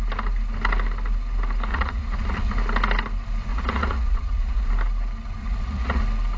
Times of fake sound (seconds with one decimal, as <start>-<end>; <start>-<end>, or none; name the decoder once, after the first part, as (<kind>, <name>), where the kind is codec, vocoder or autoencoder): 1.7-2.5 (vocoder, Vocos); 3.5-4.7; 5.4-6.0